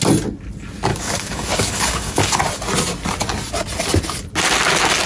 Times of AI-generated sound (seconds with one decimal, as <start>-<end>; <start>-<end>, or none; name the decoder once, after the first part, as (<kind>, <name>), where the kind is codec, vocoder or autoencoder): 0.9-2.3 (codec, DAC)

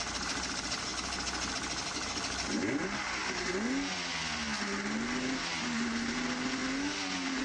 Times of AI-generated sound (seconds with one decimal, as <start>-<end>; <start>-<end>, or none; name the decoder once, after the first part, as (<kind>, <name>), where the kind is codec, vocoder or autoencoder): 0.0-0.9 (vocoder, BigVGAN v2); 2.5-3.2; 5.3-6.6

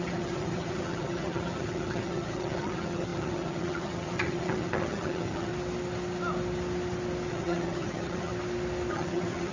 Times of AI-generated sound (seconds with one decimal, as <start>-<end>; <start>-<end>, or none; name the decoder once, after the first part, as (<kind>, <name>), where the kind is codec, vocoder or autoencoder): 0.0-5.5 (vocoder, HiFi-GAN); 7.3-8.3; 8.9-9.5

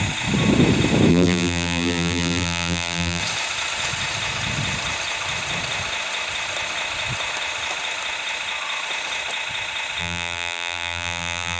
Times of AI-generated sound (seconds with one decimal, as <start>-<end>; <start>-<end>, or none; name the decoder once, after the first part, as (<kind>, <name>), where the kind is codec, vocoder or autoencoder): 1.1-3.2 (vocoder, BigVGAN v2); 10.0-11.6

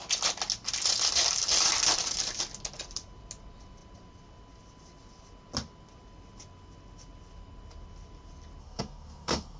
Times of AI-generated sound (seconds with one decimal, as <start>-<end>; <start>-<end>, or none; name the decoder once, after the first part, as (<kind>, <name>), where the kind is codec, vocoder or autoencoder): 8.6-9.6 (codec, SNAC)

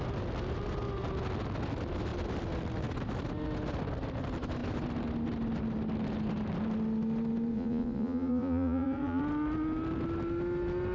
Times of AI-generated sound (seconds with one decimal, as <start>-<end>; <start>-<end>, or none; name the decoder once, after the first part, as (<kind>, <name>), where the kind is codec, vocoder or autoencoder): 7.5-9.2 (vocoder, Vocos)

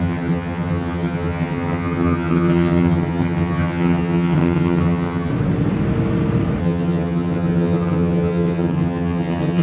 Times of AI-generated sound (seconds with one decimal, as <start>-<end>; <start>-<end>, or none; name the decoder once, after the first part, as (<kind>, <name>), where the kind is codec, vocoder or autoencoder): 0.0-5.3 (vocoder, HiFi-GAN); 6.6-9.6

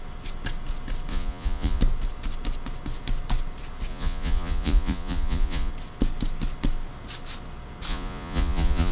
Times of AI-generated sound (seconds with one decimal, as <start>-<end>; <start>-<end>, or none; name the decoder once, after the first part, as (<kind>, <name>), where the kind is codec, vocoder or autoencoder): 1.1-1.8 (vocoder, Vocos); 3.9-5.7; 7.9-8.9